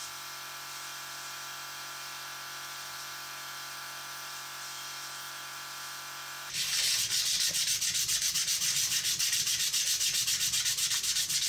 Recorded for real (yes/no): no